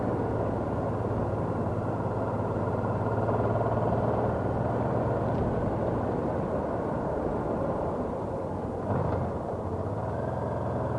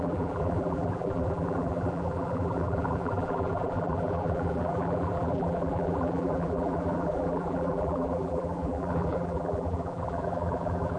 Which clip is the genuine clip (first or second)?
first